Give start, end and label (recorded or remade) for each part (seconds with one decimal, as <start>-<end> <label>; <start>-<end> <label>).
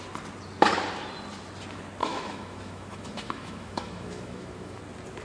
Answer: 0.0-2.0 recorded; 2.0-4.8 remade; 4.8-5.2 recorded